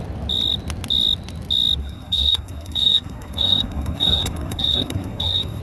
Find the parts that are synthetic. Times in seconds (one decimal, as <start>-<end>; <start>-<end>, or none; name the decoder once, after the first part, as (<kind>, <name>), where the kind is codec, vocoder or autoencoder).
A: 1.8-5.6 (codec, SNAC)